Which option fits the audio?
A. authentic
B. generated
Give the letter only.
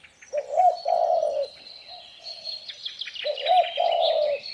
A